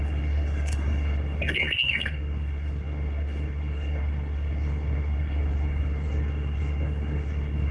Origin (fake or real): fake